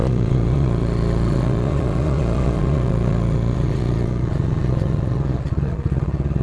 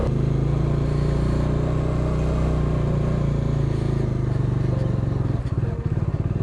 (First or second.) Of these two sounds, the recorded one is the second